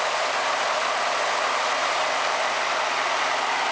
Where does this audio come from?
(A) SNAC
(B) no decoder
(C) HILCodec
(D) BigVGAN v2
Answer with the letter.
B